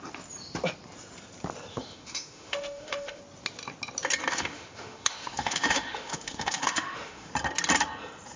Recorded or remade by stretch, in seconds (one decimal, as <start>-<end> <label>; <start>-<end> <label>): 0.0-1.7 recorded; 1.7-3.2 remade; 3.2-4.3 recorded; 4.3-7.3 remade; 7.3-8.4 recorded